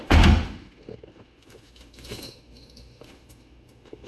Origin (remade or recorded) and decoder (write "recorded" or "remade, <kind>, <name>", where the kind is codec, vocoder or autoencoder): remade, autoencoder, DAC-VAE